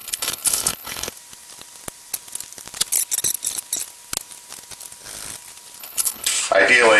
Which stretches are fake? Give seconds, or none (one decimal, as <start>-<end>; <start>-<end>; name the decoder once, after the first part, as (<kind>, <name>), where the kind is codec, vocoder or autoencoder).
0.0-1.1 (codec, HILCodec); 5.8-6.4